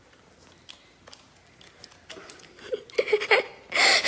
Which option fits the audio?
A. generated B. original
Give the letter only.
B